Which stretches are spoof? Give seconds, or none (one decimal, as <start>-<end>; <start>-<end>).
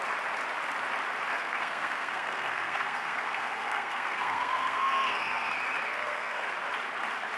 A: 1.3-5.5; 5.9-6.5